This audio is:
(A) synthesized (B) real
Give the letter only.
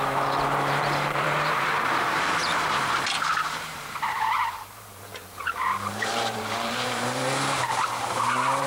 A